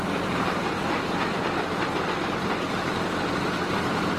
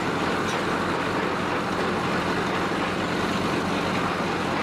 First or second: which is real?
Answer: second